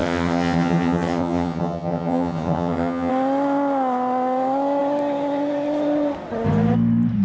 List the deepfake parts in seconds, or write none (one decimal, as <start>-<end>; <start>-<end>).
0.0-3.1